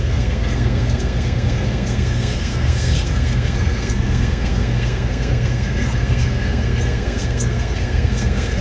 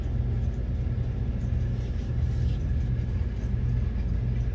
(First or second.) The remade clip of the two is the first